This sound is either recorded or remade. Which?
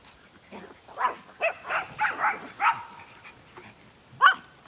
recorded